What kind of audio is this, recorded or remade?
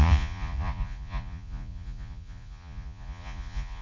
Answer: remade